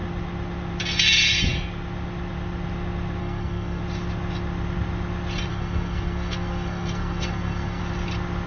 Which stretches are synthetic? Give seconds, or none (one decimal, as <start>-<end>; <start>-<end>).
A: 3.2-3.8; 5.5-7.8